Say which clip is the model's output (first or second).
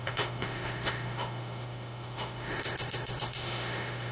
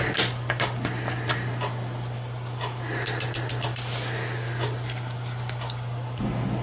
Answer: first